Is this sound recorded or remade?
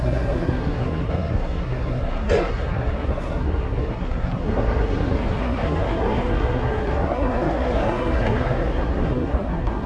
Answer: remade